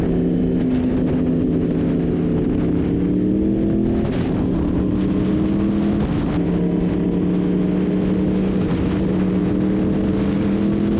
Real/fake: real